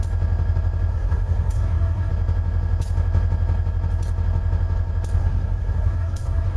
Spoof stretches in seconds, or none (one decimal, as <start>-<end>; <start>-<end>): 0.9-2.1; 5.2-6.6